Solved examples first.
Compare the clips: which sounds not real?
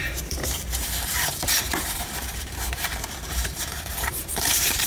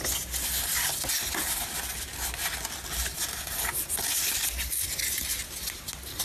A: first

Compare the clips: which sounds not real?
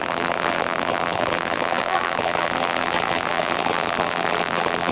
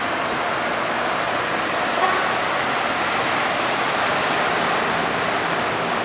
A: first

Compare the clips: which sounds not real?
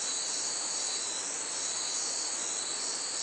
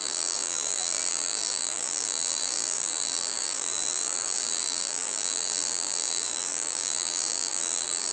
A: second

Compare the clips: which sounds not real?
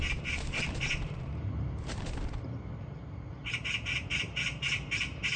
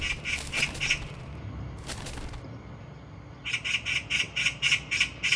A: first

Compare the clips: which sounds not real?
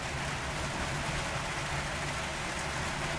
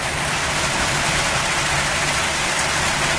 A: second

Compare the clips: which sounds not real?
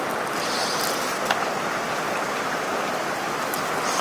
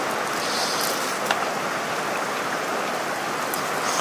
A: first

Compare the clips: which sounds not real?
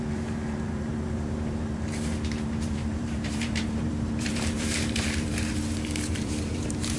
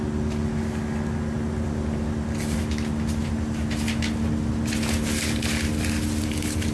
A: first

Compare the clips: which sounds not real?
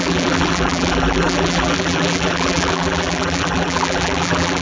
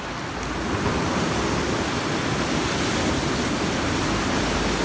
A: first